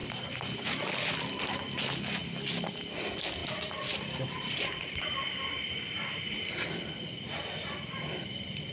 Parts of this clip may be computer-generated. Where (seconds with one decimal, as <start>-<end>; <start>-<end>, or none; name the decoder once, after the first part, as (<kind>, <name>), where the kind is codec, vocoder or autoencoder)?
0.0-1.8 (vocoder, BigVGAN v2); 3.4-6.2